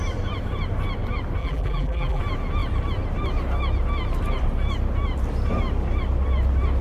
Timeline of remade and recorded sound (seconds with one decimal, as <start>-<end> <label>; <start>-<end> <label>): 0.0-1.4 recorded; 1.4-2.2 remade; 2.2-6.8 recorded